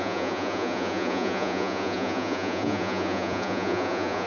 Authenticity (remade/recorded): remade